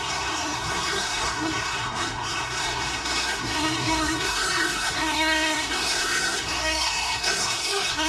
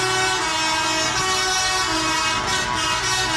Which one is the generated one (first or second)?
first